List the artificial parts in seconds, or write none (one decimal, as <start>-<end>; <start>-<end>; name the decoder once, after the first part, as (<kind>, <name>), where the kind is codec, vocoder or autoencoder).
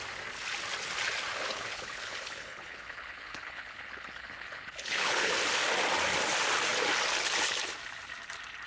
1.5-5.3 (codec, HILCodec)